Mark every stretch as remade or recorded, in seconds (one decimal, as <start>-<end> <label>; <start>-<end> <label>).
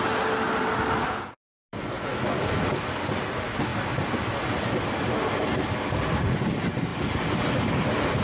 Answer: 0.0-8.2 recorded